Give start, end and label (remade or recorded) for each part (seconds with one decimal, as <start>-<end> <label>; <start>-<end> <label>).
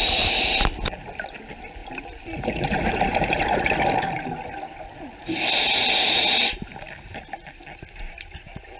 0.0-8.8 recorded